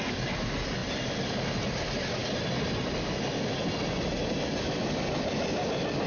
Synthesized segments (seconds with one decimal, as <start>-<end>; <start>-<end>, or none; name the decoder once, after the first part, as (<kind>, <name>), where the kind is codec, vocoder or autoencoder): none